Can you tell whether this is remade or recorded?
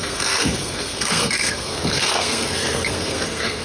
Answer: remade